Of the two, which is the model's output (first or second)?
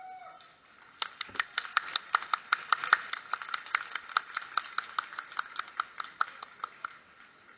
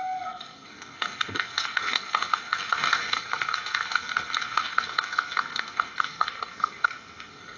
second